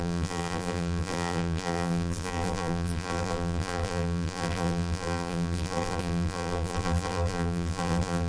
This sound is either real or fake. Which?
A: fake